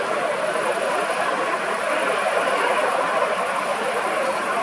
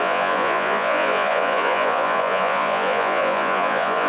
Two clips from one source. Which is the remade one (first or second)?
second